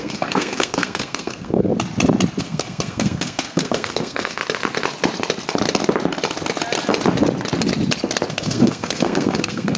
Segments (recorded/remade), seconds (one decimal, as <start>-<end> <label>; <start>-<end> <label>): 0.0-1.7 remade; 1.7-2.4 recorded; 2.4-4.4 remade; 4.4-8.3 recorded; 8.3-9.8 remade